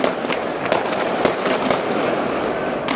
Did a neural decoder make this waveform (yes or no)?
no